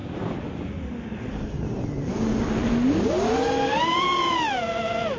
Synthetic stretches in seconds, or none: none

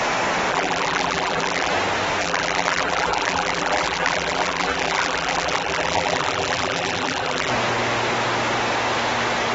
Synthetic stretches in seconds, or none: 0.5-1.7; 2.2-7.5

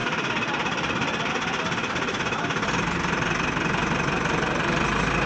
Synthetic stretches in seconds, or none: 0.0-1.3

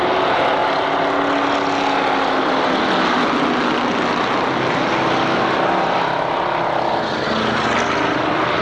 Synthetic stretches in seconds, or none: none

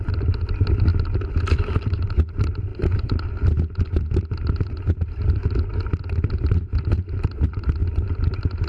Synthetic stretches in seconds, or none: 0.0-0.9; 1.5-2.7; 6.0-7.8

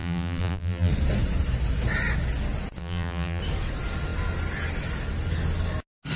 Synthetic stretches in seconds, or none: 0.0-0.9; 2.8-3.4

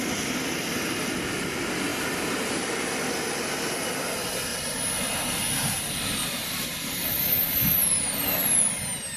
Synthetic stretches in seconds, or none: 1.9-2.5; 6.2-8.7

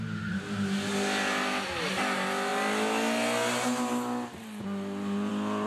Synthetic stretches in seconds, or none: none